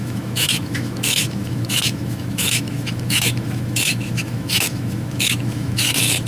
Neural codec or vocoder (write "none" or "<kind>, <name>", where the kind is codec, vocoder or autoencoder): autoencoder, DAC-VAE